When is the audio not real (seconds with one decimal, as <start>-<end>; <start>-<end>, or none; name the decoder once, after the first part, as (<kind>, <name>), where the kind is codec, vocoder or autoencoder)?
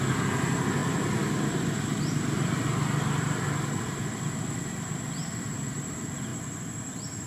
6.3-7.3 (vocoder, BigVGAN v2)